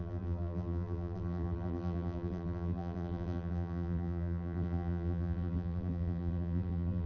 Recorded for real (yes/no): no